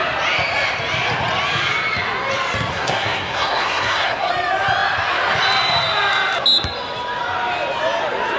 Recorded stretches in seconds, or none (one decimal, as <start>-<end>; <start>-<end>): 0.0-2.7; 4.3-8.4